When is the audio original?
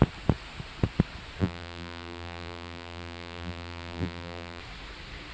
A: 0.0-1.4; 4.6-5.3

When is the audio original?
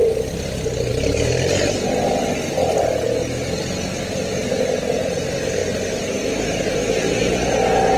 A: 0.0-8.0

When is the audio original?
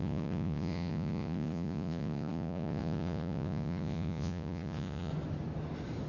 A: 5.1-6.1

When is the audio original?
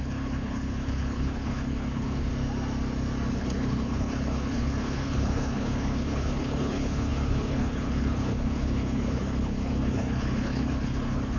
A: 2.3-3.4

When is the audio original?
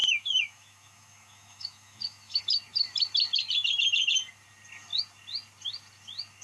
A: 2.4-6.4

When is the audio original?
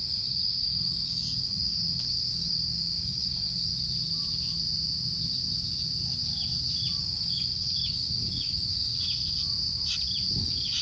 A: 3.7-7.0; 8.9-10.4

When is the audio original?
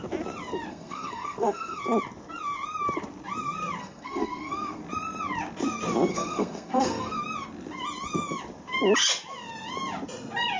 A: 0.0-0.7; 1.8-3.8; 4.8-6.1; 7.2-10.6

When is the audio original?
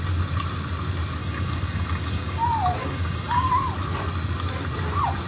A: 0.0-1.2; 2.4-2.8; 3.5-5.3